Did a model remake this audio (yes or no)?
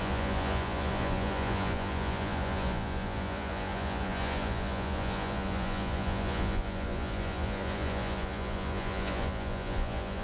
yes